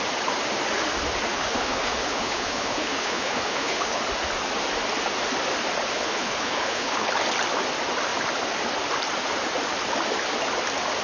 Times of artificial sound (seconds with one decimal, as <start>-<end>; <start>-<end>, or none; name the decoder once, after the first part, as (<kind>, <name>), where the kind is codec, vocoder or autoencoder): 1.3-4.0 (codec, HILCodec); 5.9-7.1